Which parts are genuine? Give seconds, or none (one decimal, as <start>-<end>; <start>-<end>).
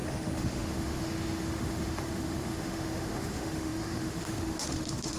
none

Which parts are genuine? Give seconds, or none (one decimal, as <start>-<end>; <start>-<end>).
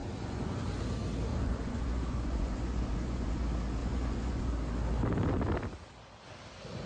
0.6-1.3; 3.4-3.8; 4.5-6.9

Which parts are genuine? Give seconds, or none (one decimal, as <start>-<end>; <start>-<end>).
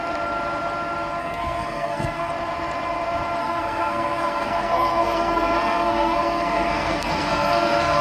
0.0-1.2; 2.3-3.4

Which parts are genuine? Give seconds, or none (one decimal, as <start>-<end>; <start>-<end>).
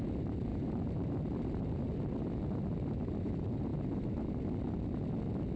0.0-0.5; 3.3-3.7; 4.4-5.6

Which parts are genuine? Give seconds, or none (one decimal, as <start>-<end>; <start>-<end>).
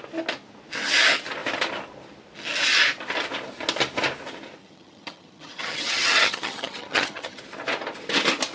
0.0-4.6; 7.4-8.5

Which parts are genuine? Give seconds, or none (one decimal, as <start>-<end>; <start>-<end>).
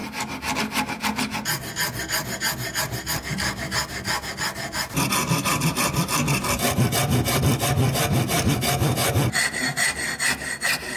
0.0-11.0